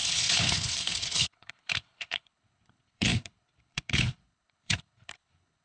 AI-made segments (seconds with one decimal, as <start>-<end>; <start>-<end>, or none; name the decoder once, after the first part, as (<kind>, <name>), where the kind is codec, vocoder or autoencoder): 0.0-5.6 (codec, HILCodec)